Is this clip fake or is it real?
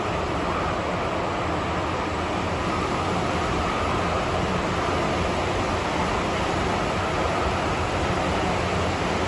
real